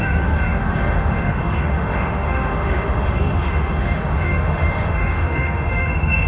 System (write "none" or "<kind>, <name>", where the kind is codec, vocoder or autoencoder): autoencoder, DAC-VAE